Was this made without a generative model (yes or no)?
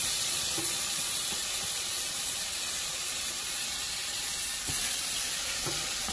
no